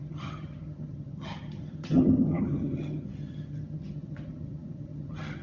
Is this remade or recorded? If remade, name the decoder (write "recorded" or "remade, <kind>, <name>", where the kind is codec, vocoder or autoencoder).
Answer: remade, vocoder, HiFi-GAN